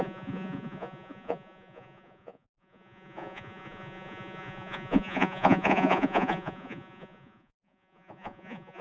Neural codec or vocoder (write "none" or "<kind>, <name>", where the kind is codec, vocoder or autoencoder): vocoder, Vocos